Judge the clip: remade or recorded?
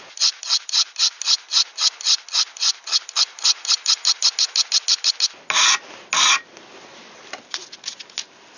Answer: recorded